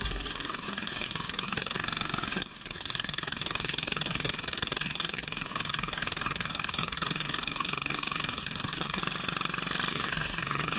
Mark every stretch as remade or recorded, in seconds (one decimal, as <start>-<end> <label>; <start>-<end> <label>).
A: 0.0-9.0 remade; 9.0-9.9 recorded; 9.9-10.8 remade